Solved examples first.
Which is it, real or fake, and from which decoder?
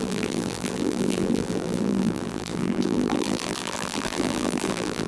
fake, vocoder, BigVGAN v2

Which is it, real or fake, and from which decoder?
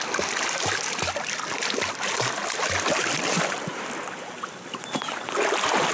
real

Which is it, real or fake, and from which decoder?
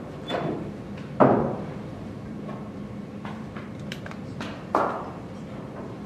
fake, vocoder, BigVGAN v2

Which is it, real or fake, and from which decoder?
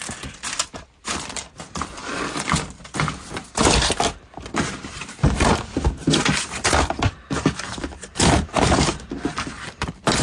fake, vocoder, BigVGAN v2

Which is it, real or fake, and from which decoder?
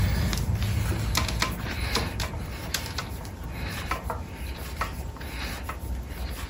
real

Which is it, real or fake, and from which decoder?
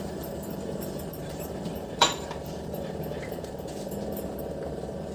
fake, vocoder, BigVGAN v2